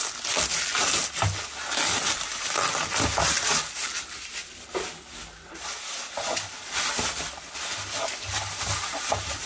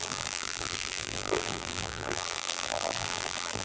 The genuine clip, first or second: first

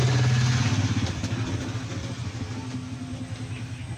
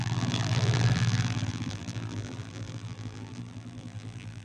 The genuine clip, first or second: first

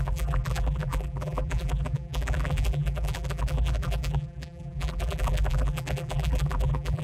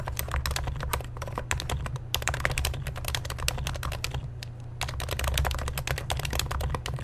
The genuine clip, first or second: second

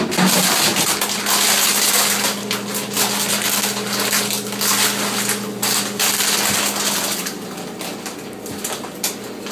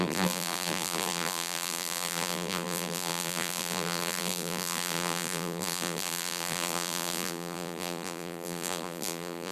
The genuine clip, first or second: first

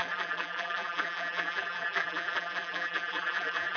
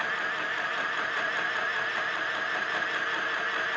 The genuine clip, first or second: second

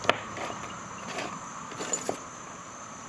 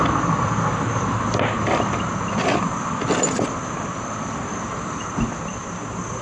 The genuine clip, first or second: second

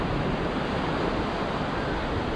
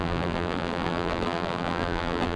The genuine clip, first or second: first